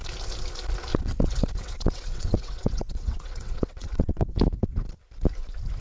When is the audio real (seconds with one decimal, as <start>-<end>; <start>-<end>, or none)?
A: 0.0-0.9; 4.4-5.8

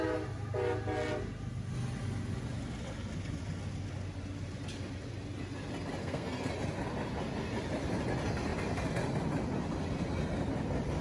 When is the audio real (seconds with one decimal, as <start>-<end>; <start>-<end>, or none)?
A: 0.0-6.0; 6.5-11.0

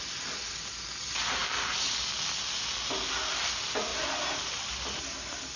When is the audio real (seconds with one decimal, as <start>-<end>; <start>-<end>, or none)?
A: 0.0-3.9; 4.7-5.6

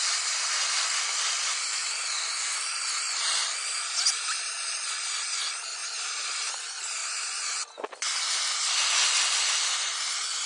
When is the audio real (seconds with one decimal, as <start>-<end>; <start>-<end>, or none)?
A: 0.0-10.5

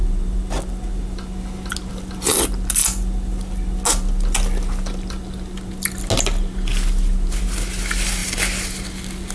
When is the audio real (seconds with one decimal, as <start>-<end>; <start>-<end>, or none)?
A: 0.0-9.3

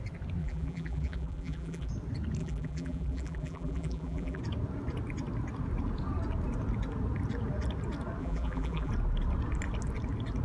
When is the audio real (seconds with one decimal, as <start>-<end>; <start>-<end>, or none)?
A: 0.0-0.4; 1.9-2.4; 4.4-8.2; 8.9-10.4

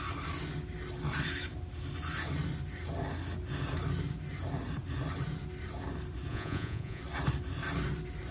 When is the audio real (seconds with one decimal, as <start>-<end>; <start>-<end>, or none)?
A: 0.0-6.3; 7.0-8.3

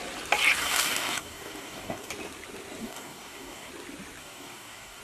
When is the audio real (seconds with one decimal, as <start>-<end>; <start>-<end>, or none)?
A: 0.0-0.6; 2.1-2.8; 3.7-4.2